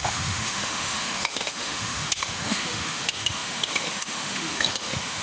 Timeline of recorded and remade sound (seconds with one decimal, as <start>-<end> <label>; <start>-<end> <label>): 0.0-5.2 remade